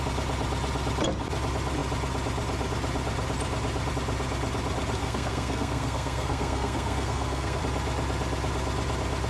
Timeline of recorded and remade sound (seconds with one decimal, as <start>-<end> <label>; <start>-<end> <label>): 0.0-5.0 recorded; 5.0-7.6 remade; 7.6-9.3 recorded